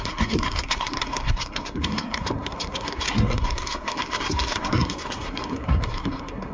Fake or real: fake